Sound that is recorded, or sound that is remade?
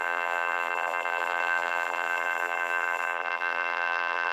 remade